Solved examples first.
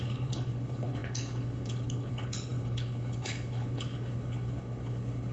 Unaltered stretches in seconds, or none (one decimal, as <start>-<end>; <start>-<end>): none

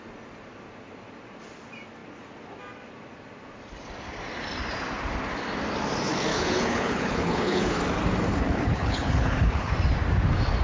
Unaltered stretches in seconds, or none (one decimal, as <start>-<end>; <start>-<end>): 0.0-6.3; 7.8-8.3; 9.7-10.6

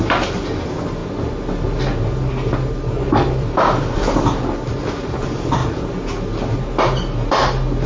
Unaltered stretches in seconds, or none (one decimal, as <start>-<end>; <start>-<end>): 0.0-7.9